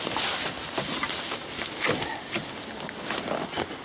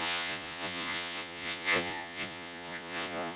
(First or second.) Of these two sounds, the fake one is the second